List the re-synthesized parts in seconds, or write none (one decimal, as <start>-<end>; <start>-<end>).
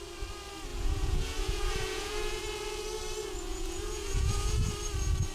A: 0.7-2.4; 3.5-4.7